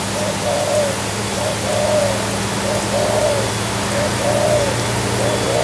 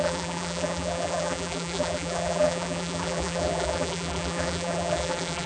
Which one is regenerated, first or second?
second